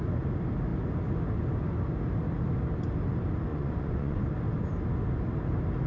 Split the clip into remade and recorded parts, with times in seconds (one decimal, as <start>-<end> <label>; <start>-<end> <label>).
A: 0.0-3.5 recorded; 3.5-4.3 remade; 4.3-5.9 recorded

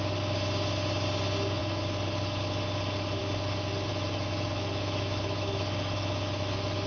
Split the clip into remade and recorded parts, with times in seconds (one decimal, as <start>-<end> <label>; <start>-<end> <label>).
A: 0.0-3.9 recorded; 3.9-6.9 remade

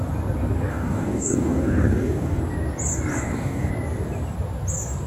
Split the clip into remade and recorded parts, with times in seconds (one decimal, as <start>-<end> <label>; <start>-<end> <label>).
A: 0.0-0.7 recorded; 0.7-2.4 remade; 2.4-3.1 recorded; 3.1-3.7 remade; 3.7-5.1 recorded

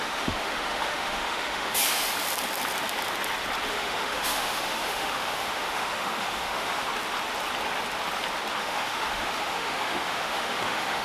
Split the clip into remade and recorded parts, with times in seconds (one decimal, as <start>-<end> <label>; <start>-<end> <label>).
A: 0.0-1.8 remade; 1.8-3.7 recorded; 3.7-6.9 remade; 6.9-8.6 recorded; 8.6-11.0 remade

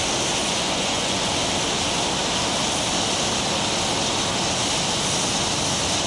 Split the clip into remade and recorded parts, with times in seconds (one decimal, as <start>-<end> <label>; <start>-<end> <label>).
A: 0.0-0.4 recorded; 0.4-1.3 remade; 1.3-6.1 recorded

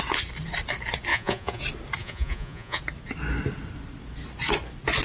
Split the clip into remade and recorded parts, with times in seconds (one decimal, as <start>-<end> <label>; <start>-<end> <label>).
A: 0.0-1.1 recorded; 1.1-1.6 remade; 1.6-2.0 recorded; 2.0-2.8 remade; 2.8-5.0 recorded

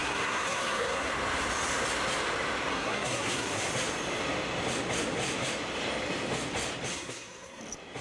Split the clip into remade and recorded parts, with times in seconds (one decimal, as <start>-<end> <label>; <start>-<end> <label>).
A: 0.0-1.1 remade; 1.1-2.7 recorded; 2.7-3.7 remade; 3.7-6.9 recorded; 6.9-7.6 remade; 7.6-8.0 recorded

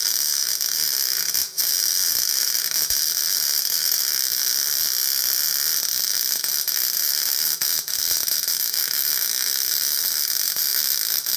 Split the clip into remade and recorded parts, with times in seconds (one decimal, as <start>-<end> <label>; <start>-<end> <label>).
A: 0.0-4.4 remade; 4.4-6.0 recorded; 6.0-11.4 remade